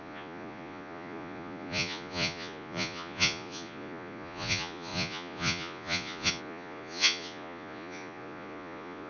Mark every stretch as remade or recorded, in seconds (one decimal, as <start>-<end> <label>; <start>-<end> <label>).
0.0-9.1 remade